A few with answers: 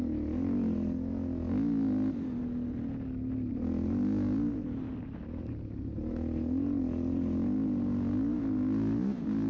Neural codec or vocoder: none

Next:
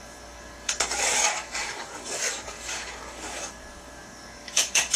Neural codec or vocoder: codec, DAC